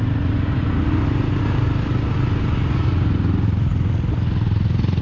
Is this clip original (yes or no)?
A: yes